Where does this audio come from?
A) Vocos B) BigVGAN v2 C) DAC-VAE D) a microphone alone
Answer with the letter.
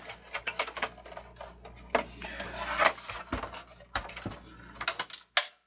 D